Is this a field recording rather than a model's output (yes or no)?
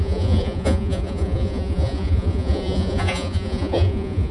no